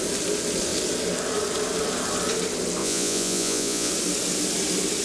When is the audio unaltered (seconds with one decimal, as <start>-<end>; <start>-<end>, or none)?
0.0-2.8; 3.9-5.0